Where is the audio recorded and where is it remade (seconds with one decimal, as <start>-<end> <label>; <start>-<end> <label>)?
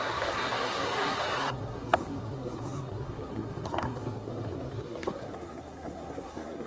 0.0-6.7 remade